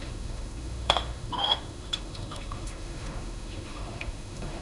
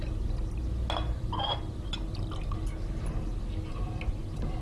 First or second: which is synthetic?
first